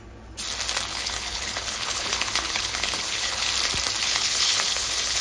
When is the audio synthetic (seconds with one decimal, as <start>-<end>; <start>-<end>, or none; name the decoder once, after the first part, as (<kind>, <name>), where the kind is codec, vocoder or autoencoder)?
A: 0.9-3.5 (codec, HILCodec); 4.0-5.2